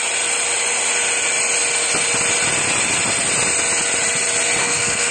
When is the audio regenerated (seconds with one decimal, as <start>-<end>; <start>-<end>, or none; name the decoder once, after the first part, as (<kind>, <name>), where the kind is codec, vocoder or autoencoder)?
4.6-5.1 (codec, SNAC)